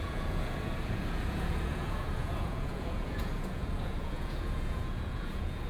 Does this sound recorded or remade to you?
remade